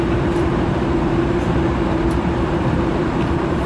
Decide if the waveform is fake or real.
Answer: fake